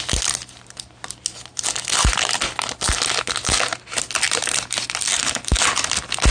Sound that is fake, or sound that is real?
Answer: real